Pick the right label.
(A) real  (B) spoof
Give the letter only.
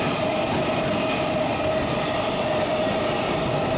A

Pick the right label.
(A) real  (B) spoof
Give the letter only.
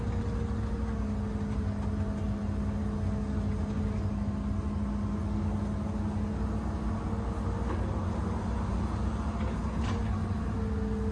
A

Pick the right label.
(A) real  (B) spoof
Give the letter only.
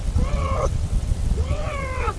B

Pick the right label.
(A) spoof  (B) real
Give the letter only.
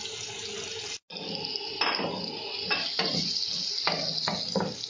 B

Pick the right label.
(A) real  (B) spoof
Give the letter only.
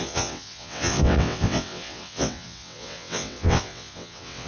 B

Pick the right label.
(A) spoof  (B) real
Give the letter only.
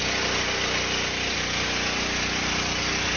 B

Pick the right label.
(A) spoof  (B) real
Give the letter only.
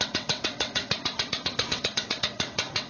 A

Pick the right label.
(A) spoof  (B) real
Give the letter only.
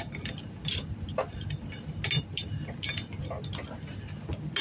B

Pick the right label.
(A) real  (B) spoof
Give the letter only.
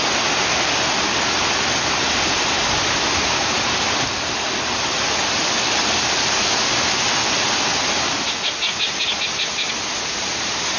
A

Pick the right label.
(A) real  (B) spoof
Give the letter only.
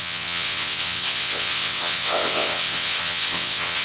B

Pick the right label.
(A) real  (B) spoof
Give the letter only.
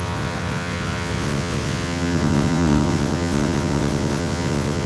B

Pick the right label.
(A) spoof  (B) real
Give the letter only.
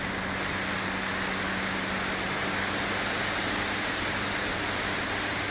B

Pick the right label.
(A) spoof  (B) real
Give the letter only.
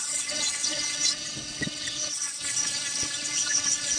A